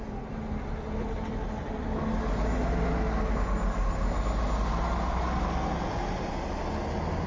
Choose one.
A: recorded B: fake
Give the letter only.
A